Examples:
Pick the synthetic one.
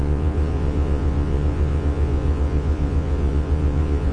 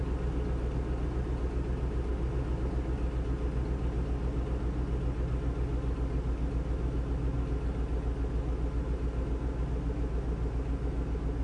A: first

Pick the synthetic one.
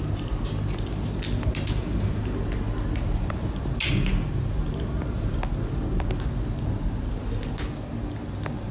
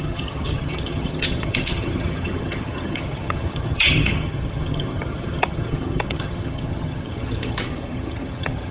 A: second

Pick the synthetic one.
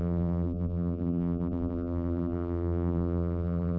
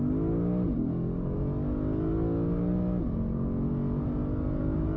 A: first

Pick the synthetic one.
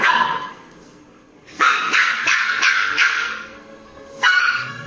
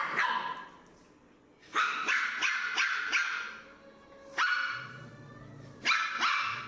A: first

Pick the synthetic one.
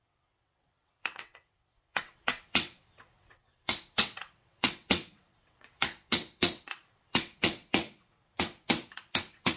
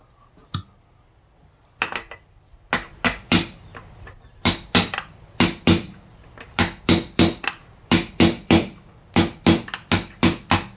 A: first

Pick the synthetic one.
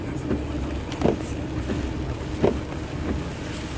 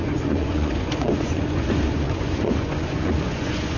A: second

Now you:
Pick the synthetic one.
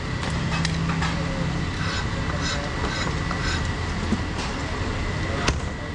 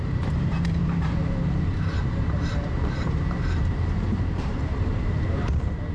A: second